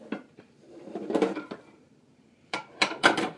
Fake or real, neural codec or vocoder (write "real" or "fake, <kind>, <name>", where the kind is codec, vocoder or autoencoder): fake, vocoder, BigVGAN v2